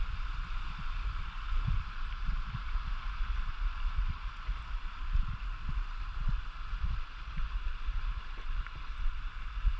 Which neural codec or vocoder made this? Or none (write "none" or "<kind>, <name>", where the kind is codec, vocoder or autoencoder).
vocoder, BigVGAN v2